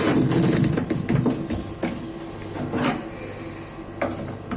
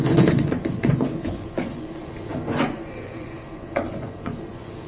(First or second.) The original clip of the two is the first